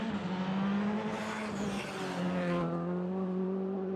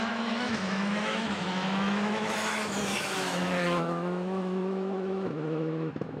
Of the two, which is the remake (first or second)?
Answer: second